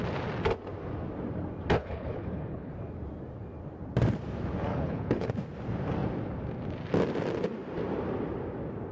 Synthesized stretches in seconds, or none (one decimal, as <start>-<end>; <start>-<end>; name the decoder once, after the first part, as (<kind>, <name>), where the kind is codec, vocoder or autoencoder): 1.8-2.7 (codec, HILCodec); 4.7-5.3